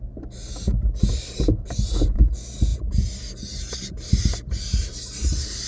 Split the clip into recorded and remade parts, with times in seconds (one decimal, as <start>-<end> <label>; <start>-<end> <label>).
0.0-5.7 recorded